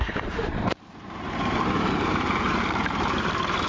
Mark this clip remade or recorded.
remade